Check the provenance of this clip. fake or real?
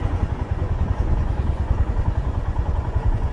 fake